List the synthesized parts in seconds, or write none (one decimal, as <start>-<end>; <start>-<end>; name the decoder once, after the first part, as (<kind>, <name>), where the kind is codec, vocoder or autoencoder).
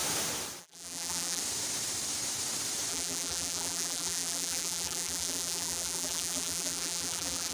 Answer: 0.6-1.4 (vocoder, BigVGAN v2); 2.9-7.5